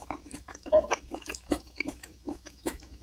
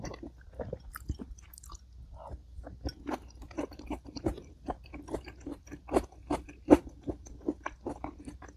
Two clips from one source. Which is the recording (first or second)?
second